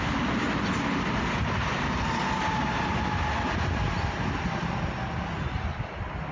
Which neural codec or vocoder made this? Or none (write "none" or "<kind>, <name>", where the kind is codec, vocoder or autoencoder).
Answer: none